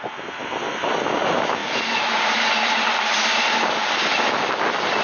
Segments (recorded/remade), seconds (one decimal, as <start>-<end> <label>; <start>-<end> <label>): 0.0-5.0 recorded